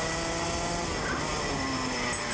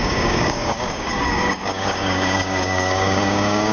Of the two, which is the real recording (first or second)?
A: first